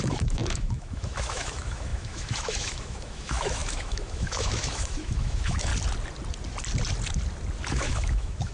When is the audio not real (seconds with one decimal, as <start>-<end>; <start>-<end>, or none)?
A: 0.0-5.7; 7.7-8.5